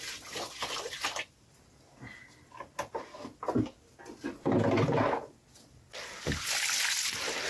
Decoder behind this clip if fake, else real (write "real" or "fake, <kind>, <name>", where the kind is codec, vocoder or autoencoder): real